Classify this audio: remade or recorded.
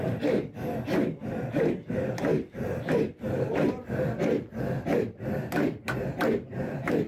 recorded